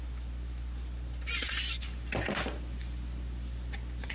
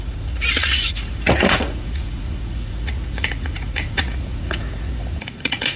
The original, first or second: first